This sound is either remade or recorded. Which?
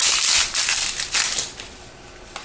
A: recorded